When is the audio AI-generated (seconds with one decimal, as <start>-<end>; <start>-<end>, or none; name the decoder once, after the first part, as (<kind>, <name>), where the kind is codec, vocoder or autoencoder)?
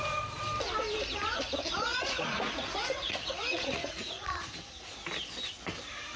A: 1.9-4.5 (vocoder, Vocos)